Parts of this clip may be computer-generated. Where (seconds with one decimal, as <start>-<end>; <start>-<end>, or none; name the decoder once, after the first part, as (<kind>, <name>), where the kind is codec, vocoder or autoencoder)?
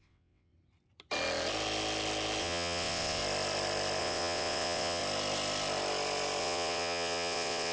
0.0-0.5 (vocoder, WaveNeXt); 2.4-3.2; 4.0-5.0; 6.4-7.7